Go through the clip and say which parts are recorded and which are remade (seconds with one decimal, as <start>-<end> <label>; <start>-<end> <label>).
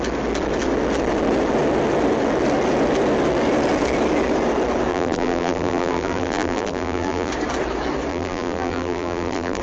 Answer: 0.0-4.9 recorded; 4.9-7.3 remade; 7.3-8.1 recorded; 8.1-9.6 remade